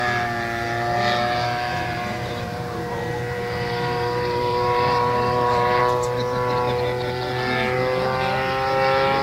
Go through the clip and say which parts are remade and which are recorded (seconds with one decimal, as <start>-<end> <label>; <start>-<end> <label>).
0.0-1.7 recorded; 1.7-5.8 remade; 5.8-9.2 recorded